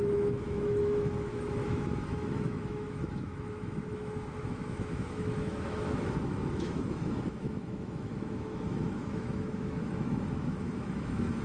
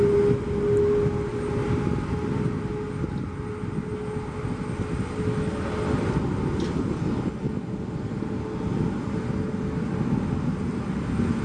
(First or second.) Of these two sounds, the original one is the second